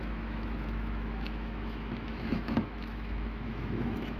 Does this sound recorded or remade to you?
remade